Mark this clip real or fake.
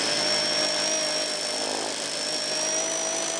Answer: real